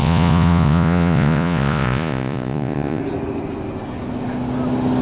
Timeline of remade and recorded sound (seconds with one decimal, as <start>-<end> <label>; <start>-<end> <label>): 0.0-3.0 remade; 3.0-5.0 recorded